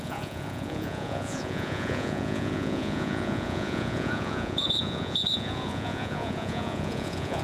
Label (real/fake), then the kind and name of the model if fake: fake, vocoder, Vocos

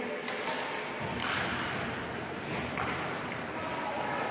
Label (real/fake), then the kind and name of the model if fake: real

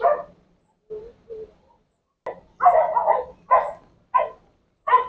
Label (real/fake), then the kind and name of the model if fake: real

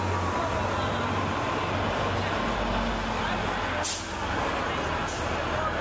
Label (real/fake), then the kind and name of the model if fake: real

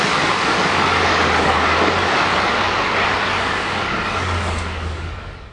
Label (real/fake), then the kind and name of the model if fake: fake, codec, DAC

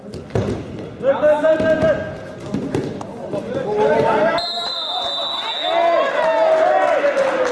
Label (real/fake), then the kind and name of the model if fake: real